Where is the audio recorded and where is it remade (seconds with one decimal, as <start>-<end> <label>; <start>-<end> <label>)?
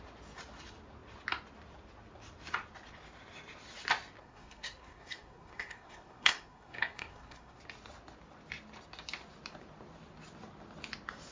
0.0-4.2 recorded; 4.2-7.6 remade; 7.6-11.3 recorded